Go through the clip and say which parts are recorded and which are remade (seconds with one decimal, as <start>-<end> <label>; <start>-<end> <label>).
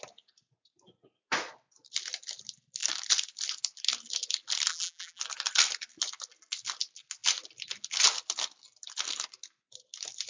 0.0-4.7 recorded; 4.7-5.2 remade; 5.2-10.3 recorded